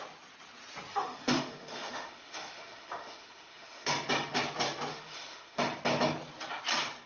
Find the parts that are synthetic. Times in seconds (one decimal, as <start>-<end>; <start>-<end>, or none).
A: 0.9-3.9; 4.9-5.6